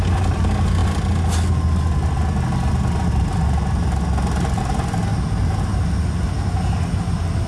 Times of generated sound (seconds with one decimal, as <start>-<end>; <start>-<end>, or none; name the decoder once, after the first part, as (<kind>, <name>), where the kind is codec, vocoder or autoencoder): none